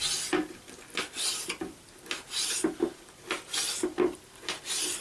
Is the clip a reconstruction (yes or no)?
no